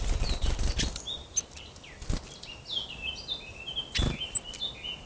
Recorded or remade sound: recorded